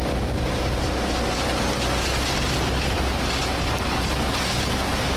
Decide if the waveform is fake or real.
real